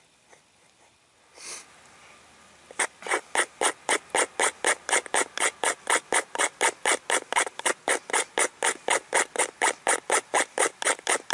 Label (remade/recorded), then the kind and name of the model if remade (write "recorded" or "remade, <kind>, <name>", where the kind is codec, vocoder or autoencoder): recorded